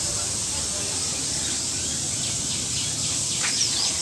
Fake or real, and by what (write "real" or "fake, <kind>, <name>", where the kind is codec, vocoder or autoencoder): real